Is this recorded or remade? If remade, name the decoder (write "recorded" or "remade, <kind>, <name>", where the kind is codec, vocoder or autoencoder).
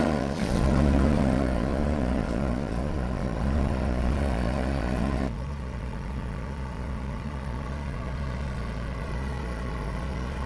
remade, vocoder, Vocos